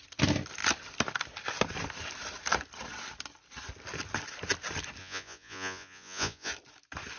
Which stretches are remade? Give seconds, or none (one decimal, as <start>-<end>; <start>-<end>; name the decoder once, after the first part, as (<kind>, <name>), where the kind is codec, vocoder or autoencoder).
5.0-6.5 (vocoder, Vocos)